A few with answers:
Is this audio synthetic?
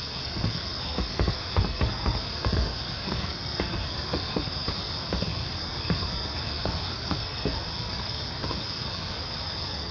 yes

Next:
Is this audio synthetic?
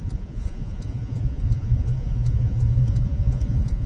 yes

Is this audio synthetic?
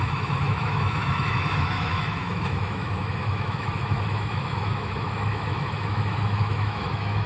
yes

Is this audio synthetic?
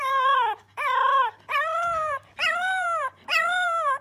yes